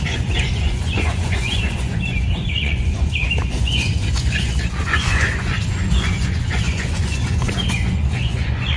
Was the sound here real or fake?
fake